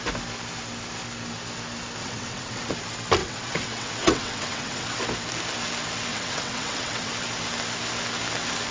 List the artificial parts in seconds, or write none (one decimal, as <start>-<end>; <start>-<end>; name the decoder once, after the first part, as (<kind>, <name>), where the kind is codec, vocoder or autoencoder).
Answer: 2.0-2.7 (vocoder, WaveNeXt); 3.2-5.0; 6.1-7.1